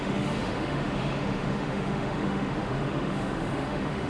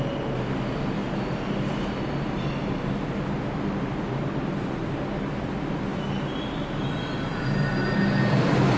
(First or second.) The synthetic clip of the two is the first